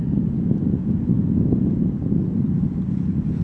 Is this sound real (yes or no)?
yes